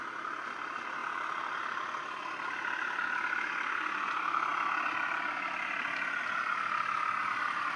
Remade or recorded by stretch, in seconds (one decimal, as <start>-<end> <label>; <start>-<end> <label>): 0.0-7.8 recorded